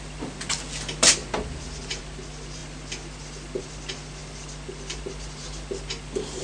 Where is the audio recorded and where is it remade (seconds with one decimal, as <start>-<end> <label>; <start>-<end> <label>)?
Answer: 0.0-6.4 recorded